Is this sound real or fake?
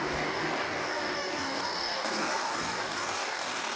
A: fake